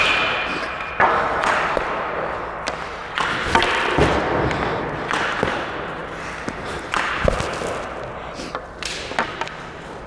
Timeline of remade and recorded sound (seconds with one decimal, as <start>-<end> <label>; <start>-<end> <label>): 0.0-10.1 recorded